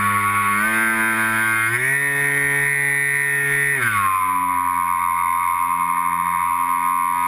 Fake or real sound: real